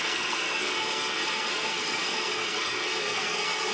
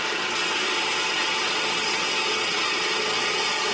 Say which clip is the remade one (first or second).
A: first